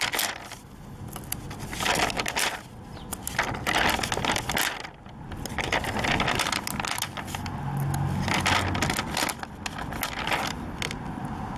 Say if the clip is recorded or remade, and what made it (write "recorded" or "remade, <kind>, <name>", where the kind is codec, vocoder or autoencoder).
recorded